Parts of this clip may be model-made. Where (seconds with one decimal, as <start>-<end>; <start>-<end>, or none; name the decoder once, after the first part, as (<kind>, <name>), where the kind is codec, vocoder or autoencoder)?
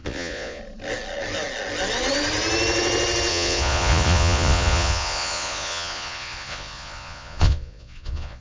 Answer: 0.0-0.6 (vocoder, Vocos); 3.3-8.4